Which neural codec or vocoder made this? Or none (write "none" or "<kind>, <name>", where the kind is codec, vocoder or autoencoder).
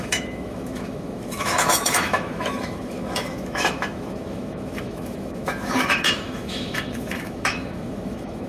autoencoder, DAC-VAE